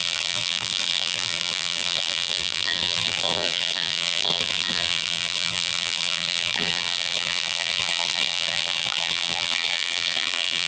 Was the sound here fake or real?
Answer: fake